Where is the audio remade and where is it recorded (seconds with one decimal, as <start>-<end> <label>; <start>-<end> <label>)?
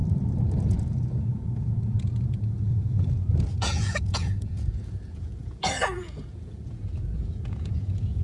0.0-0.6 recorded; 0.6-8.2 remade